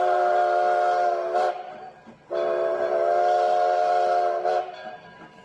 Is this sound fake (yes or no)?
no